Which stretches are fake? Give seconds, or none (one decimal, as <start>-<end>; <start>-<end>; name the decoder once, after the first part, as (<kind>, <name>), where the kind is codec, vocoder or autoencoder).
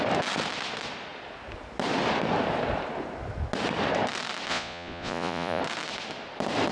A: 4.5-5.6 (vocoder, Vocos)